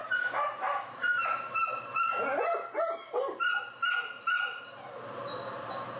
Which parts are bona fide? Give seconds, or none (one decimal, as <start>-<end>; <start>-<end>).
0.0-6.0